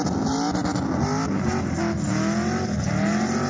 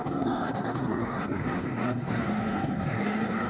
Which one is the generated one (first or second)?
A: second